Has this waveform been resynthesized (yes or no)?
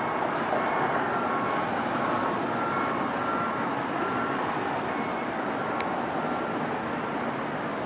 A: no